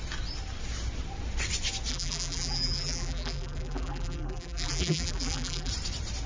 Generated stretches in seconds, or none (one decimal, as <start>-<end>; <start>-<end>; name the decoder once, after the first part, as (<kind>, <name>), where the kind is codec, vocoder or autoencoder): 1.9-5.7 (vocoder, BigVGAN v2)